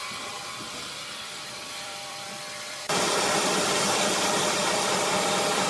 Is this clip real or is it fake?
fake